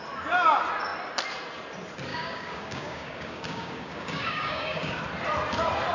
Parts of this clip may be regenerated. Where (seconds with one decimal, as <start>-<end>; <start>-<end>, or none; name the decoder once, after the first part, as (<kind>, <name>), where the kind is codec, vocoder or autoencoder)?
2.1-5.0 (codec, DAC)

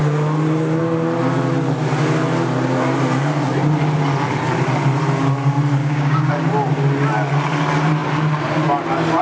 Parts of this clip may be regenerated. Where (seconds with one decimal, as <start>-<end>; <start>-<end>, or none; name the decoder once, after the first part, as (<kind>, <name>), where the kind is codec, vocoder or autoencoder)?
5.8-6.3 (codec, DAC)

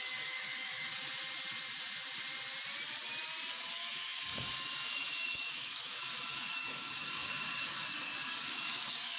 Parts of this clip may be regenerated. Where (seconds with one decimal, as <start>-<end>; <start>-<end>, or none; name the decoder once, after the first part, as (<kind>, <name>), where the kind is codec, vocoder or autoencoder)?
0.0-0.9 (codec, DAC); 3.5-9.2

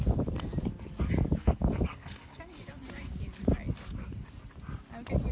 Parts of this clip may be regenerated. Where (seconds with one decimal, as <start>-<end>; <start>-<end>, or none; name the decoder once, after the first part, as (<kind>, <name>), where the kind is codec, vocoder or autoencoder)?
1.4-2.7 (codec, DAC)

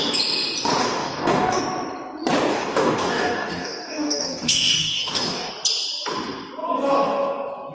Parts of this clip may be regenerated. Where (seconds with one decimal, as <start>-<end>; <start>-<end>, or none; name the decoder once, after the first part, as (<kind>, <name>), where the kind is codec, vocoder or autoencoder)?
0.8-1.6 (codec, DAC); 2.5-5.5